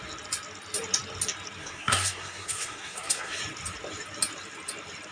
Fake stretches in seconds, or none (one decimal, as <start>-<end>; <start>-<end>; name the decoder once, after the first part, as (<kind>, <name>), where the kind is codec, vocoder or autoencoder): 1.6-3.4 (codec, SNAC)